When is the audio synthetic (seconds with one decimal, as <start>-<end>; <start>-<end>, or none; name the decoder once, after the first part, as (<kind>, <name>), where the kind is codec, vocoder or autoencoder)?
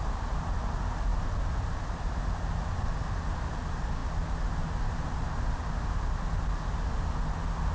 none